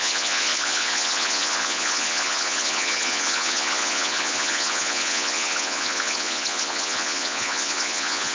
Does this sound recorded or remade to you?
remade